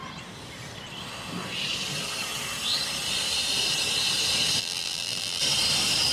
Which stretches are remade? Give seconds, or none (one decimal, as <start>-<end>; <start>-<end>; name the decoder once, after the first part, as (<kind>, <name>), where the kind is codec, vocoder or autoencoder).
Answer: 4.6-5.4 (vocoder, BigVGAN v2)